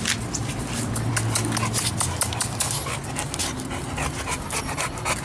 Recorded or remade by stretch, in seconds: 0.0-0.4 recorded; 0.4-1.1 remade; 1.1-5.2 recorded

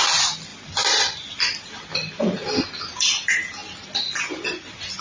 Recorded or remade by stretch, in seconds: 0.0-0.5 recorded; 0.5-2.6 remade; 2.6-3.6 recorded; 3.6-4.2 remade; 4.2-5.0 recorded

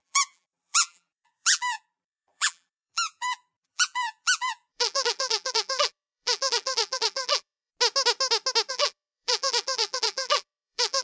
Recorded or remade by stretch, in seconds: 0.0-7.7 remade; 7.7-8.7 recorded; 8.7-11.0 remade

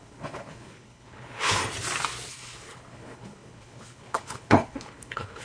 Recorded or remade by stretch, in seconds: 0.0-1.6 remade; 1.6-2.3 recorded; 2.3-5.4 remade

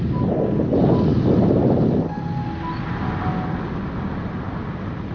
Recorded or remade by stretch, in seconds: 0.0-5.1 recorded

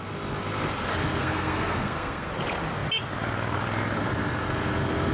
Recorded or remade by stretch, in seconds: 0.0-1.2 recorded; 1.2-2.3 remade; 2.3-5.1 recorded

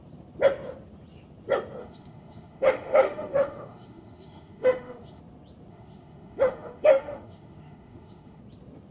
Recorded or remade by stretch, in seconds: 0.0-1.8 recorded; 1.8-5.2 remade; 5.2-5.7 recorded; 5.7-8.4 remade; 8.4-8.9 recorded

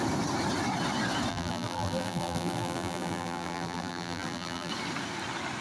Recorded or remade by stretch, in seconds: 0.0-1.3 recorded; 1.3-4.7 remade; 4.7-5.6 recorded